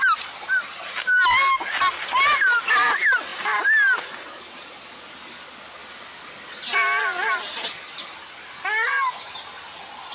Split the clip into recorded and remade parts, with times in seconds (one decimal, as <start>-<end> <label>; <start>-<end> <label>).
0.0-10.1 recorded